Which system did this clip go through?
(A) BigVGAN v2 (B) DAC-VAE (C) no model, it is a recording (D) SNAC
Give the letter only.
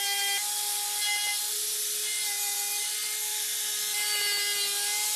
C